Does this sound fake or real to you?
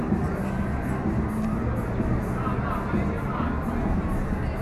real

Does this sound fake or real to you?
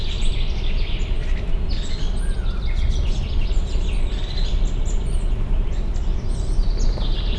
real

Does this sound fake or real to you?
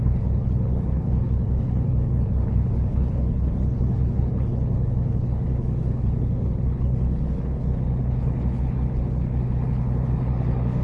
fake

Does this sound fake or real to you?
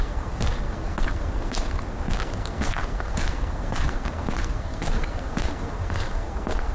fake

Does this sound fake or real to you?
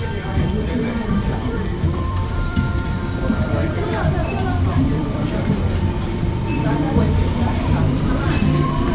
fake